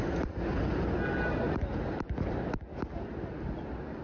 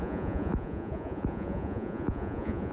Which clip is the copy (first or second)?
second